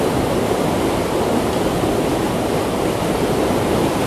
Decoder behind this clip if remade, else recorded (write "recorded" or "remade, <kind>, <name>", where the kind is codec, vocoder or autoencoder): recorded